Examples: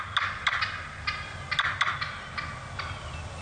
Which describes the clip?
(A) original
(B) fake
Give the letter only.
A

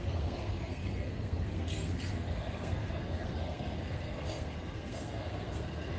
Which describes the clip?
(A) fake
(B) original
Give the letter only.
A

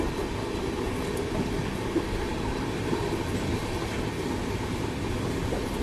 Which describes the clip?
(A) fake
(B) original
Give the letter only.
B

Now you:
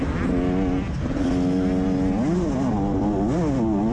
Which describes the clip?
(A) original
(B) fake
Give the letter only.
A